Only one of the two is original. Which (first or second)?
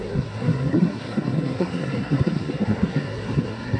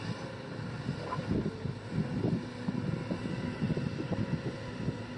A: second